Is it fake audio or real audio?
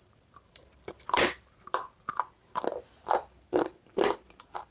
fake